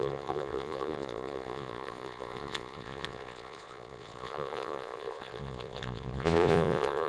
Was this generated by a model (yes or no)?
yes